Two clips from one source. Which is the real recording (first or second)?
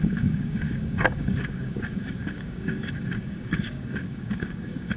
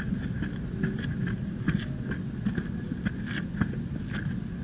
second